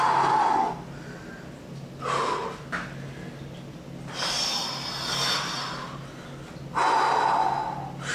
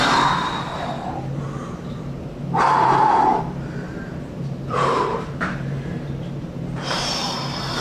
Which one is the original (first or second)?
first